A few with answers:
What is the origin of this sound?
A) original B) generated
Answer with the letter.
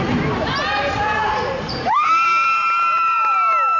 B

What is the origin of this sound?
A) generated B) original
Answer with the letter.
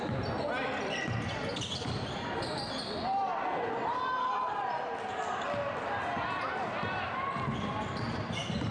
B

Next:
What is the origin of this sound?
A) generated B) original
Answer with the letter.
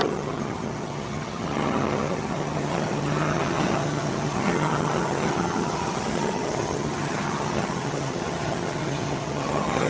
A